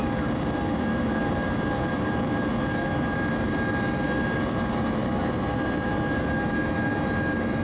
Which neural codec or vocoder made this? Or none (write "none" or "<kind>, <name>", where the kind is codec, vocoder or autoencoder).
vocoder, BigVGAN v2